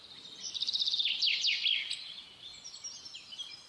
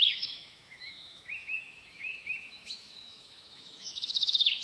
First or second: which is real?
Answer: first